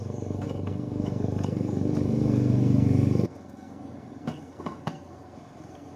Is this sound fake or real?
fake